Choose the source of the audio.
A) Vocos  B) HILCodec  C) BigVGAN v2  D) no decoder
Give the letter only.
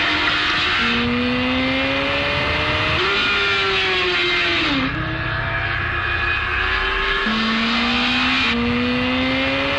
D